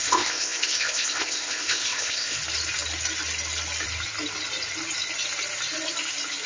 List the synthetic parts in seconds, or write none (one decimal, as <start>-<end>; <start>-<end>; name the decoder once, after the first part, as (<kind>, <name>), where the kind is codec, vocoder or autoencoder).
0.0-2.4 (codec, ZipCodec)